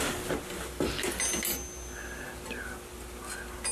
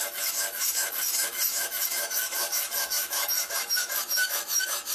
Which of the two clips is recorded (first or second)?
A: first